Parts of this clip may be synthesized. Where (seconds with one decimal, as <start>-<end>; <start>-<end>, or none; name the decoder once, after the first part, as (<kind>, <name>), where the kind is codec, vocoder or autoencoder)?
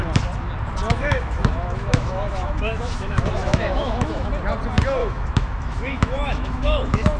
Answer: 0.9-4.3 (autoencoder, DAC-VAE); 5.0-7.2